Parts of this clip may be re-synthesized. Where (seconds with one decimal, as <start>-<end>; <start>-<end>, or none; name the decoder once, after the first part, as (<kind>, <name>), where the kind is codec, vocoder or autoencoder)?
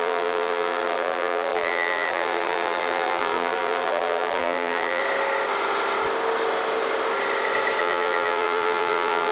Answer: 0.0-5.0 (vocoder, BigVGAN v2); 7.8-9.3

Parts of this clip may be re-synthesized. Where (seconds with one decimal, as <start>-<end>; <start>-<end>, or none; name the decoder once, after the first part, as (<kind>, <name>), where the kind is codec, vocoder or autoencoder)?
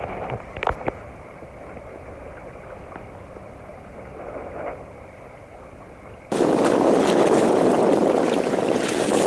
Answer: 0.0-1.9 (vocoder, BigVGAN v2); 3.2-3.7; 4.6-9.3